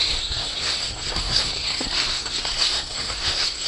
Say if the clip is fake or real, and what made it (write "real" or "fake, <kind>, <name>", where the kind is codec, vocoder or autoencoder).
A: fake, codec, SNAC